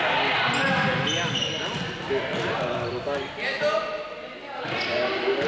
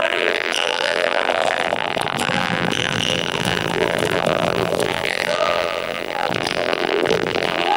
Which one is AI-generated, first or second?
second